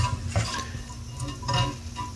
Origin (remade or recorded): recorded